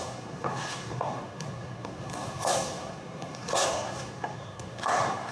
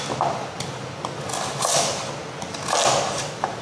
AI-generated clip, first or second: first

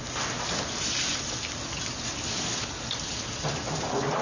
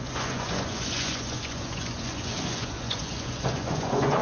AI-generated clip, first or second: second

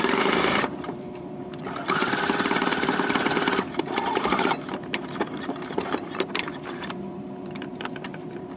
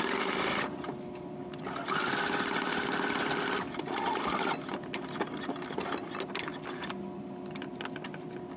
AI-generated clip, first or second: first